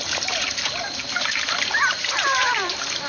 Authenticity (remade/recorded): remade